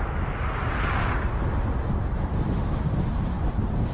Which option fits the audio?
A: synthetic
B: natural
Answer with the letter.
B